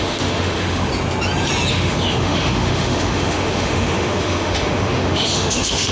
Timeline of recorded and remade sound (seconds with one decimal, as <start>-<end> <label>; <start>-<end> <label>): 0.0-0.9 remade; 0.9-1.7 recorded; 1.7-5.9 remade